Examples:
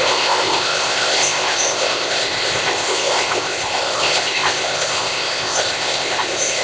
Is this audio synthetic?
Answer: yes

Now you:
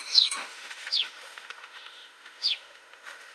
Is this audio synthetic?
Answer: yes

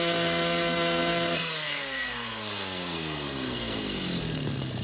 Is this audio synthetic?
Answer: yes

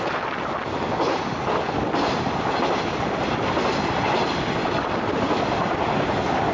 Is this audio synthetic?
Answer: no